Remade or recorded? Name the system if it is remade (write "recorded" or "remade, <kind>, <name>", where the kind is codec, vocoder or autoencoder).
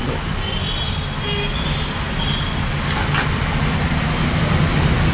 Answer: recorded